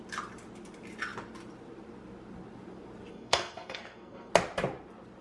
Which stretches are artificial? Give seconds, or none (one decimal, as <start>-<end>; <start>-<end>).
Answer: 3.1-4.3